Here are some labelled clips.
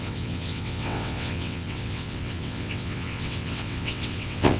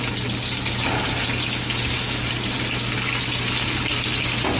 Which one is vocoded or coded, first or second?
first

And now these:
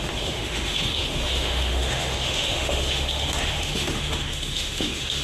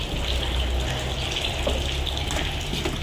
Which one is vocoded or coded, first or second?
first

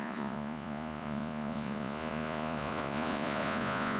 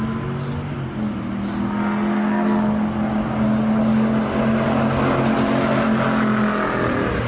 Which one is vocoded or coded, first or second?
first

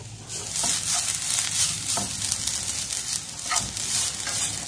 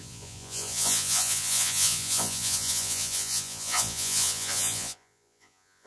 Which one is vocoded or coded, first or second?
second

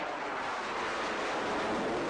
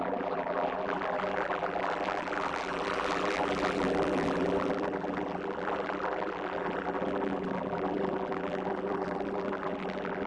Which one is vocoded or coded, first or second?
second